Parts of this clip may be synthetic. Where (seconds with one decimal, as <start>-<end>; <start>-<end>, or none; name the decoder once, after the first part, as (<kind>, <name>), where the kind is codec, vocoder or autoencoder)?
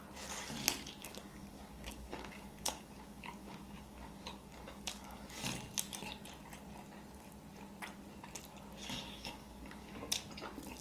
1.0-5.4 (codec, DAC); 8.8-10.1